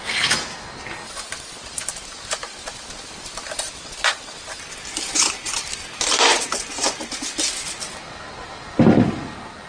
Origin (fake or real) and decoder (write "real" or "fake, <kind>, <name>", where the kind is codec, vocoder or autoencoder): real